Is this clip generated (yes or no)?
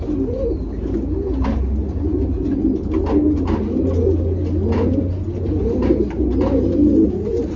no